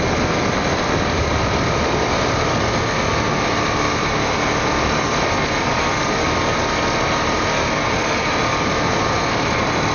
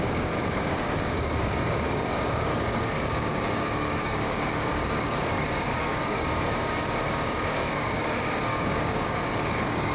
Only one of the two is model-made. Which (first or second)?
second